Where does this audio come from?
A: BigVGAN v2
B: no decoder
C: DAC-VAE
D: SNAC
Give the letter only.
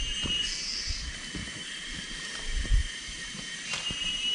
A